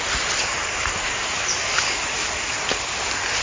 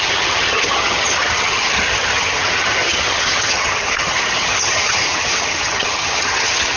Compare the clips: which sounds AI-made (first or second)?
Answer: second